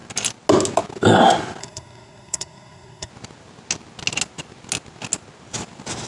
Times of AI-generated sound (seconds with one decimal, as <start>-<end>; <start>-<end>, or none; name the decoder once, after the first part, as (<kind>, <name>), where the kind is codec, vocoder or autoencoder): 1.6-3.1 (codec, SNAC)